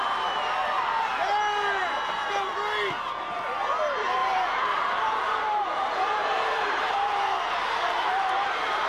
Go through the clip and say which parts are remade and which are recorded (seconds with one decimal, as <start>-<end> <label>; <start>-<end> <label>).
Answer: 0.0-4.2 recorded; 4.2-8.5 remade; 8.5-8.9 recorded